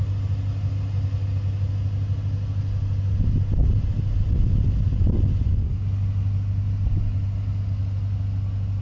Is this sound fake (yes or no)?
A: no